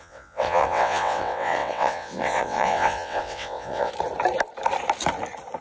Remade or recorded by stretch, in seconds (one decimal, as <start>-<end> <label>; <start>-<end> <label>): 0.0-3.9 remade; 3.9-5.6 recorded